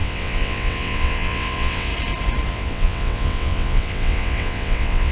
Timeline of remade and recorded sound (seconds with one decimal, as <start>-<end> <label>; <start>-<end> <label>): 0.0-1.9 remade; 1.9-2.5 recorded; 2.5-5.1 remade